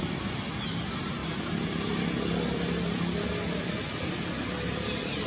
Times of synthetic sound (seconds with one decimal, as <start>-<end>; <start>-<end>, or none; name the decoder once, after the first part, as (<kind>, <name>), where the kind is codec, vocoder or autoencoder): none